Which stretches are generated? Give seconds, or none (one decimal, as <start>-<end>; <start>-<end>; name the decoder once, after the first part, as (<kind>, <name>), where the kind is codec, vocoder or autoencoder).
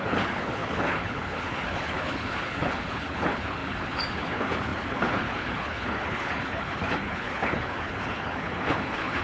0.0-9.2 (codec, HILCodec)